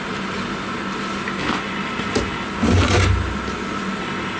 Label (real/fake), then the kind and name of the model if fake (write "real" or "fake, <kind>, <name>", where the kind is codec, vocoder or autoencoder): real